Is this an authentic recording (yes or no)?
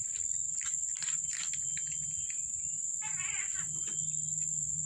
yes